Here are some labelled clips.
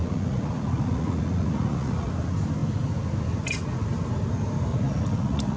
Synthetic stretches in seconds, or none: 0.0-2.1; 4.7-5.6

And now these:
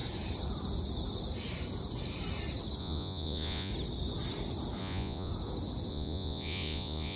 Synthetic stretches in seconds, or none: 2.8-3.7; 4.8-5.3; 5.9-7.2

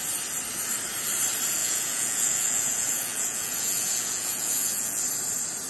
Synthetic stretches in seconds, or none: 1.6-5.0

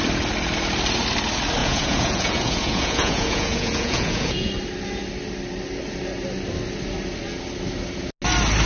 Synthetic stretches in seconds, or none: 1.6-4.5

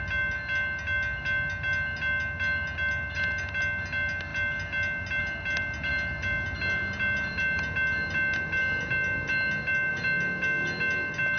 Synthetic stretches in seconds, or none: none

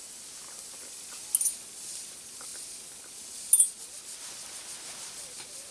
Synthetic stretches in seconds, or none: none